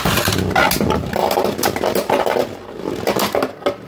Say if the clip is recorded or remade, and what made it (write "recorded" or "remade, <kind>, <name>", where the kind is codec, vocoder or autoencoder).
recorded